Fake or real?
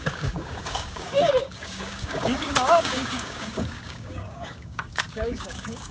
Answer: fake